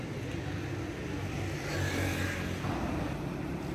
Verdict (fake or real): real